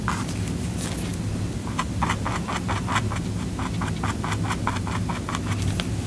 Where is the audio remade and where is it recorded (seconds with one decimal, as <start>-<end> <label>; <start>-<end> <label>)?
0.0-6.1 recorded